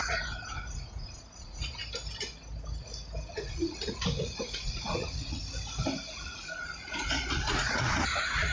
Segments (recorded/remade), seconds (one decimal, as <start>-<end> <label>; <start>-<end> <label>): 0.0-1.8 remade; 1.8-3.3 recorded; 3.3-5.4 remade; 5.4-6.1 recorded; 6.1-8.5 remade